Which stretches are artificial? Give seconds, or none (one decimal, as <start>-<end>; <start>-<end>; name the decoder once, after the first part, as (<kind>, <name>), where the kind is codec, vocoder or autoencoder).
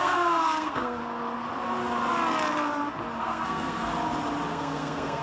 0.0-1.0 (codec, SNAC); 3.2-3.9; 4.5-5.2